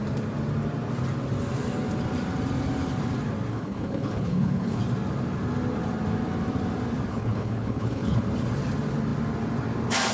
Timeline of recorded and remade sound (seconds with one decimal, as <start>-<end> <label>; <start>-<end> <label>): 0.0-3.5 recorded; 3.5-4.8 remade; 4.8-7.1 recorded; 7.1-8.2 remade; 8.2-10.1 recorded